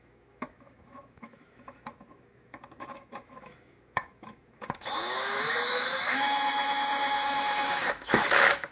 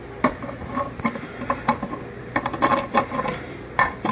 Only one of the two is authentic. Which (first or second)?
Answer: second